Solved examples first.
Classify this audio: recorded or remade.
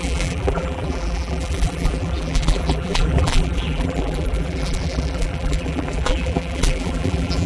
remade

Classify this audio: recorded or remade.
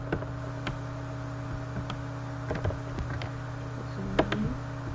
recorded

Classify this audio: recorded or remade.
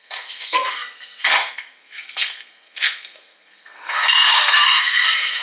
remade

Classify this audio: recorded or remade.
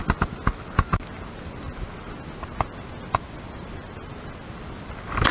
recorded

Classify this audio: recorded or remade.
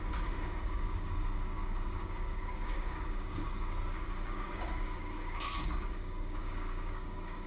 remade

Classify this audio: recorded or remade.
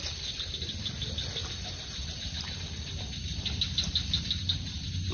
recorded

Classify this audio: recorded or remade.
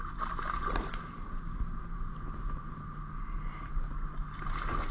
recorded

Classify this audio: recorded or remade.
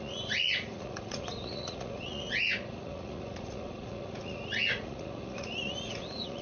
remade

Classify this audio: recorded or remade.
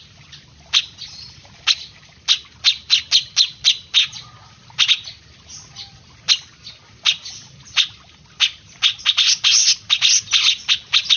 recorded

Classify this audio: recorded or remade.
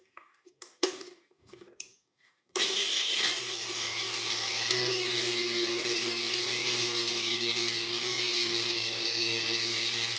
remade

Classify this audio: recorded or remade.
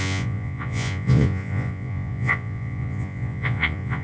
remade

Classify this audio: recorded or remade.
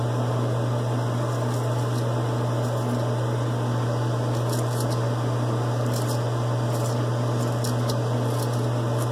recorded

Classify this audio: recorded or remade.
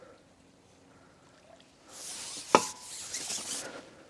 recorded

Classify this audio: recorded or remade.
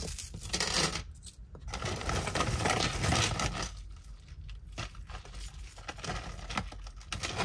recorded